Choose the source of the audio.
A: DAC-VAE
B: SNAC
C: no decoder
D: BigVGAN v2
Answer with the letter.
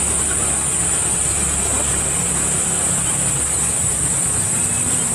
C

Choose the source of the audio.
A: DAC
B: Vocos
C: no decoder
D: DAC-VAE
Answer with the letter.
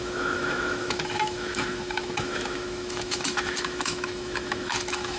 D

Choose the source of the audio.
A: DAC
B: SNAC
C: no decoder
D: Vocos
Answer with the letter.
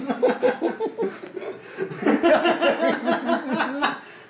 C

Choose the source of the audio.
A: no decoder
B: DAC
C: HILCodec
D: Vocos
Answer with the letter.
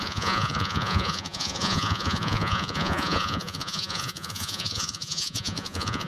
D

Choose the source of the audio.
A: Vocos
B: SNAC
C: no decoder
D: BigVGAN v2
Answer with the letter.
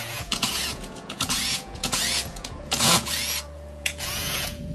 A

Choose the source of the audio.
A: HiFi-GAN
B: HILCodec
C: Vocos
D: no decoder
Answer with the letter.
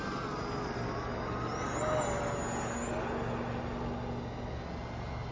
D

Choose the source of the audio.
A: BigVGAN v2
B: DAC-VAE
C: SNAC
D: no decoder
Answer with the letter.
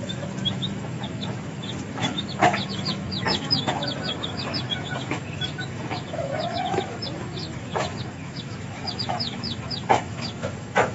B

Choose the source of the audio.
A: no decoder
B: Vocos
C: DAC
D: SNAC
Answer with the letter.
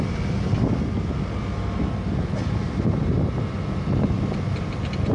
A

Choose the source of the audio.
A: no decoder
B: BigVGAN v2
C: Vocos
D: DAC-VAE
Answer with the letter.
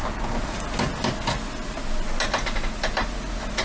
A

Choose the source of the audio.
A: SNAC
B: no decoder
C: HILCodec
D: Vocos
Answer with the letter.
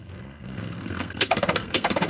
A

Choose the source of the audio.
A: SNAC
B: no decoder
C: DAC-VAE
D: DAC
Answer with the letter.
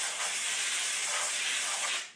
B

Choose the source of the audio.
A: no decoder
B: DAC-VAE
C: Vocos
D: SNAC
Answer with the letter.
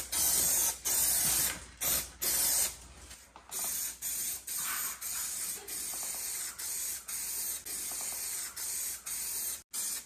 A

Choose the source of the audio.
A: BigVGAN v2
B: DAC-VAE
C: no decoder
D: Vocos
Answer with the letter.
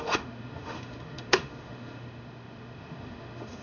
B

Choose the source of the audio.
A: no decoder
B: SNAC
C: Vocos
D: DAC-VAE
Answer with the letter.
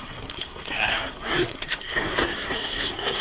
B